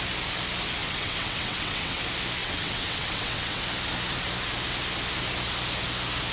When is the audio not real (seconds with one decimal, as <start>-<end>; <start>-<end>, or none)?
0.8-2.0; 2.4-3.6